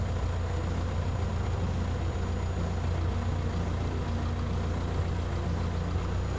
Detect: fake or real real